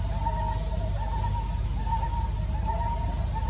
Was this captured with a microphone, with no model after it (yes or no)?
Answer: yes